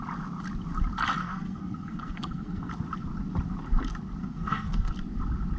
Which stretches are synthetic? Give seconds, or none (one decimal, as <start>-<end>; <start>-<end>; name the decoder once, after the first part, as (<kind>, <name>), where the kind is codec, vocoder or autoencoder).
1.2-2.7 (codec, SNAC); 4.2-4.9